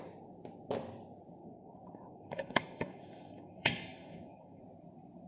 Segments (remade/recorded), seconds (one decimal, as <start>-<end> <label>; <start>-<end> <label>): 0.0-1.4 recorded; 1.4-4.6 remade; 4.6-5.3 recorded